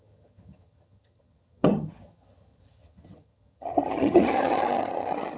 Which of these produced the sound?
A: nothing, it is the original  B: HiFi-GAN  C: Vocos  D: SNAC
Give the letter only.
B